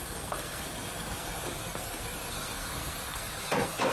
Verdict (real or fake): fake